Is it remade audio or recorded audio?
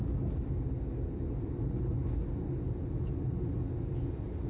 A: recorded